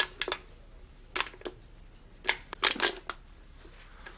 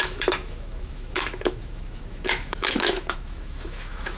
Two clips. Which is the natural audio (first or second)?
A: first